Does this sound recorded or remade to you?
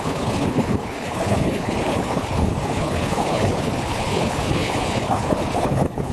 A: remade